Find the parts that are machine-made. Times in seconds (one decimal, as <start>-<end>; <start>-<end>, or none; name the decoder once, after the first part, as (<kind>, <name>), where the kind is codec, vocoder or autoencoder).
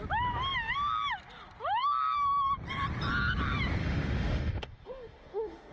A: 3.8-5.7 (autoencoder, DAC-VAE)